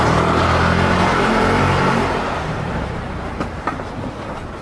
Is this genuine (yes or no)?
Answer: no